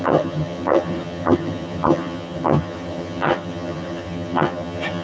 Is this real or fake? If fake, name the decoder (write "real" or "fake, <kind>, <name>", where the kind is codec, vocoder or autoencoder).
fake, vocoder, HiFi-GAN